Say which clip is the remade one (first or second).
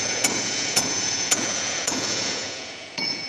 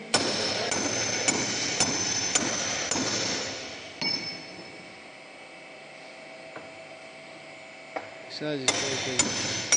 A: first